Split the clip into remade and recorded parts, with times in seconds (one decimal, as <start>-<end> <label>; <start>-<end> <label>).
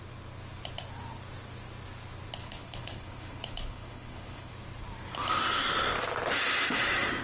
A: 0.0-2.4 recorded; 2.4-4.5 remade; 4.5-7.2 recorded